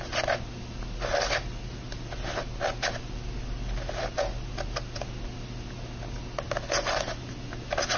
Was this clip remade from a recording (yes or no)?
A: no